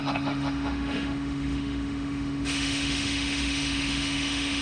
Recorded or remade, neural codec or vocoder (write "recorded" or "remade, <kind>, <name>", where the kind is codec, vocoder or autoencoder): remade, autoencoder, DAC-VAE